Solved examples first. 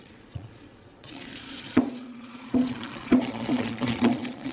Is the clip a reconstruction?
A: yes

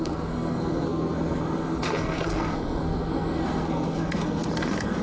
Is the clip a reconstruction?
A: yes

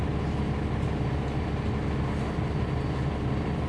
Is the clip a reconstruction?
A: no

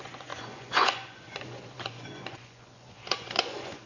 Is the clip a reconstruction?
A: yes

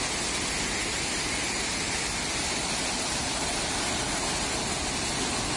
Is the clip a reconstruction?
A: no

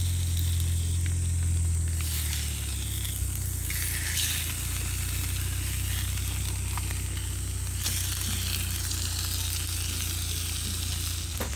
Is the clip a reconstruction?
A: no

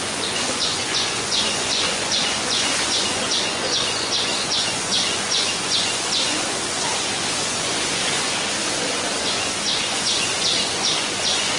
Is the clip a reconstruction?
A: yes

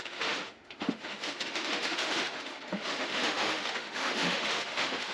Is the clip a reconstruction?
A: yes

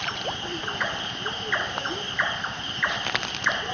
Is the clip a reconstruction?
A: no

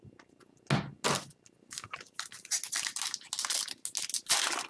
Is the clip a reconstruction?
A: no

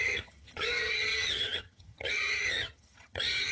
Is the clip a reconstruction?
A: yes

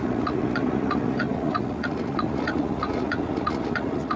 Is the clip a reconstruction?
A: yes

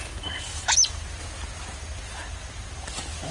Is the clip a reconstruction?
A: no